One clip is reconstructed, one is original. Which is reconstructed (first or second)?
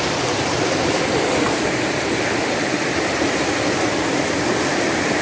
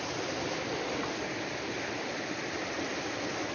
first